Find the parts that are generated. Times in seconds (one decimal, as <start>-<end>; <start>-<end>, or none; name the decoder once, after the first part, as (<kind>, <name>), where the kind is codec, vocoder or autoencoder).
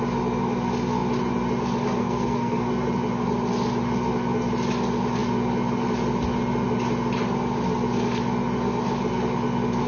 2.0-2.7 (codec, SNAC)